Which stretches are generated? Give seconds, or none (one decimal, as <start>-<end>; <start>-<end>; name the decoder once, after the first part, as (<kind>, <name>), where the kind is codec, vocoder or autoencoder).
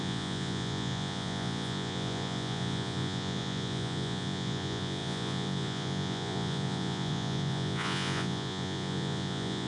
0.0-9.7 (vocoder, Vocos)